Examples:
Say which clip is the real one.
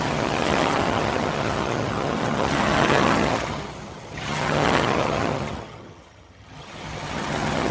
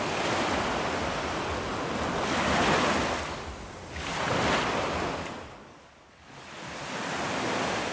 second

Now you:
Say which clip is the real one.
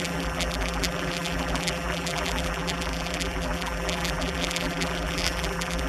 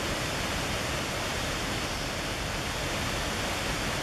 second